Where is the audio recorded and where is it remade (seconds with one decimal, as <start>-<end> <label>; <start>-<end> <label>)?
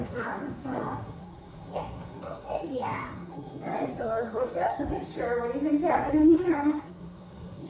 0.0-5.2 remade; 5.2-5.9 recorded; 5.9-7.7 remade